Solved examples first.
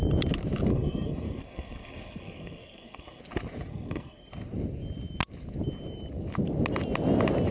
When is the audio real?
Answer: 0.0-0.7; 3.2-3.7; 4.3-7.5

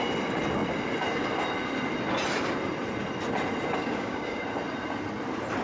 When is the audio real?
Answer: 0.0-3.8; 4.4-5.6

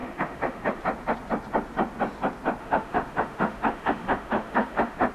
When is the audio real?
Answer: 0.8-2.6

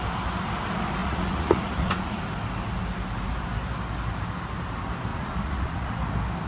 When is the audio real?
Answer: 0.0-1.0; 2.2-5.1; 6.1-6.5